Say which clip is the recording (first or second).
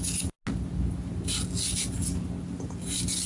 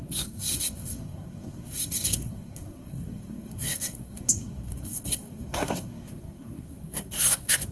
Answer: first